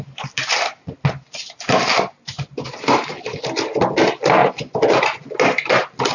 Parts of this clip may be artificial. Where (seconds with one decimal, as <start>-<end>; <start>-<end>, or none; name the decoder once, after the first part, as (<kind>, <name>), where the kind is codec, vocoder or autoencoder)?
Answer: none